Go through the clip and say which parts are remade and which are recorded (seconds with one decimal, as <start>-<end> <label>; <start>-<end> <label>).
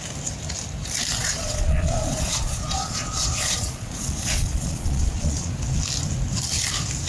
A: 0.0-1.2 recorded; 1.2-5.5 remade; 5.5-7.1 recorded